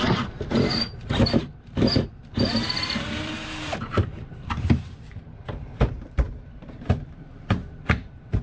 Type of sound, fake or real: fake